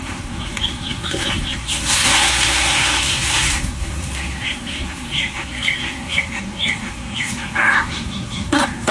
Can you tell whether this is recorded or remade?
remade